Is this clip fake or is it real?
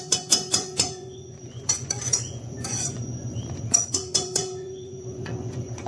fake